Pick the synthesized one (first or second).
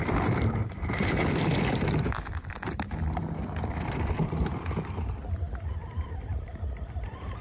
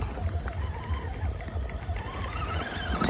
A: first